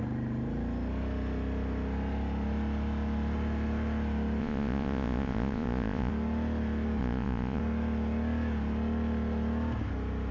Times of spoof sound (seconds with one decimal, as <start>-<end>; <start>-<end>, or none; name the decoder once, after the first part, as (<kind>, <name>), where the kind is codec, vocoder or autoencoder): 4.4-6.1 (vocoder, Vocos); 7.0-7.6